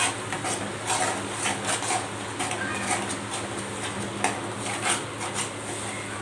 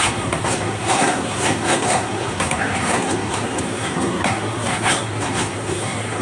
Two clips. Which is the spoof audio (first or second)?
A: second